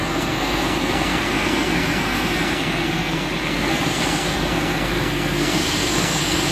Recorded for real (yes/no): no